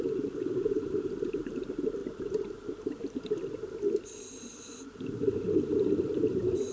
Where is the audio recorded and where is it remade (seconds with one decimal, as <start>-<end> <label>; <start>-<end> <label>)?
0.0-2.0 remade; 2.0-4.8 recorded; 4.8-6.7 remade